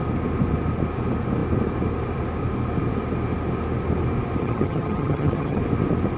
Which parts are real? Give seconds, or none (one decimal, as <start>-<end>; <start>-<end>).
0.0-4.4; 5.6-6.2